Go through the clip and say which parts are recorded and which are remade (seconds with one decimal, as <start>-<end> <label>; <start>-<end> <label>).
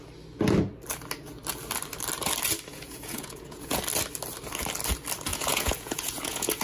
0.0-2.7 recorded; 2.7-3.8 remade; 3.8-5.3 recorded; 5.3-6.6 remade